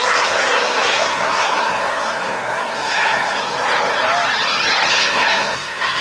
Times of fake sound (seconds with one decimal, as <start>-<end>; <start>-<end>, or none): 0.0-3.4; 4.9-6.0